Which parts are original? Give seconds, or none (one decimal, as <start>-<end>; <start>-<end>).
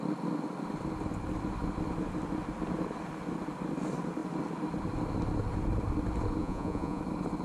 0.0-6.4; 7.0-7.4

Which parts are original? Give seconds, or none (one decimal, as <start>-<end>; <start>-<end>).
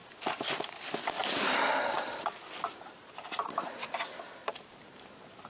0.7-1.2; 4.0-4.4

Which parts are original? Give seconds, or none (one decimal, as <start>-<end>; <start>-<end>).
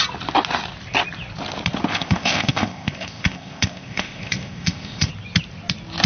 0.0-1.9; 5.1-6.1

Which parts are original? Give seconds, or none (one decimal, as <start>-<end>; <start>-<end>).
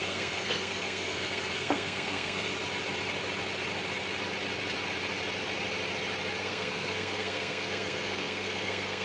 2.5-6.4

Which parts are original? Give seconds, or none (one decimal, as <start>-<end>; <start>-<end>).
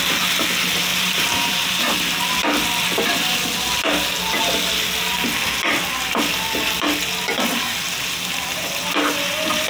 0.0-0.9; 1.8-9.7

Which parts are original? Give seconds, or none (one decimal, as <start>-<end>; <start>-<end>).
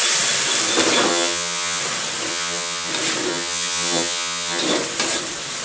0.0-1.1; 1.8-2.3; 2.9-3.3; 4.6-5.6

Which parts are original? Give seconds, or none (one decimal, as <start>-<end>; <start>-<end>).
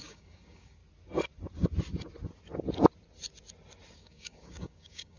0.8-3.9